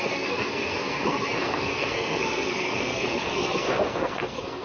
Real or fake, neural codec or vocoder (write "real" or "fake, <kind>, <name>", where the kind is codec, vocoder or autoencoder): fake, codec, SNAC